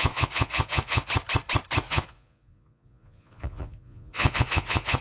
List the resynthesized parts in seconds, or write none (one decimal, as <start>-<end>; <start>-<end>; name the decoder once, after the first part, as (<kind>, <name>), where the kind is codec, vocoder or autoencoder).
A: 0.0-1.1 (vocoder, Vocos); 1.8-5.0

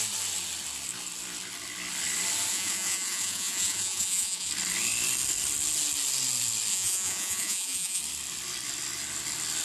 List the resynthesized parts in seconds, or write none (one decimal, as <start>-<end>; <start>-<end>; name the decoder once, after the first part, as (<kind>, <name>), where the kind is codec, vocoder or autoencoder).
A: 2.5-4.5 (vocoder, Vocos); 6.7-8.0

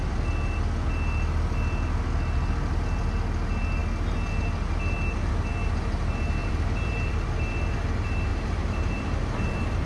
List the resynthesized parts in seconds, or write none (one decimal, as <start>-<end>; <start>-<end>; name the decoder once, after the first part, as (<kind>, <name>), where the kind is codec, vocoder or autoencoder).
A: 6.4-7.1 (vocoder, BigVGAN v2); 8.3-9.9

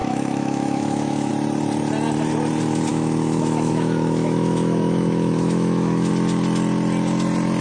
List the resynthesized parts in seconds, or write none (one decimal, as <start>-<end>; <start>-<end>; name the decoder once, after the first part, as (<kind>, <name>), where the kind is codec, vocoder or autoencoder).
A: 0.0-1.3 (autoencoder, DAC-VAE); 2.9-6.1

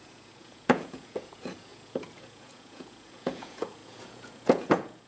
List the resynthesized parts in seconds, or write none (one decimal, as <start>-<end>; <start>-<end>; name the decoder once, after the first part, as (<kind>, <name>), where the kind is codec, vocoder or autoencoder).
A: 0.0-5.1 (vocoder, Vocos)

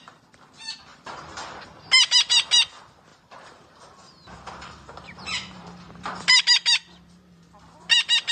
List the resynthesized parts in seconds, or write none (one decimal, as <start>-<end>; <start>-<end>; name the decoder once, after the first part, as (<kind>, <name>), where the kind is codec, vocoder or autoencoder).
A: 0.9-1.8 (vocoder, BigVGAN v2); 3.1-6.2